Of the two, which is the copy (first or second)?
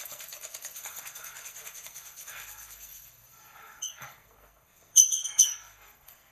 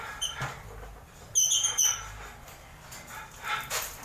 first